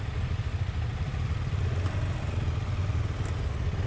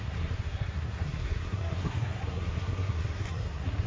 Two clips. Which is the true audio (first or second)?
first